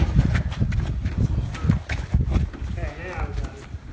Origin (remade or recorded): recorded